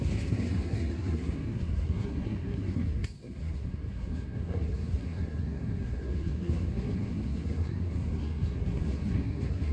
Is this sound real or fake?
fake